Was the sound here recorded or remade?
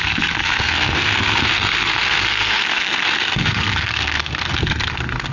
remade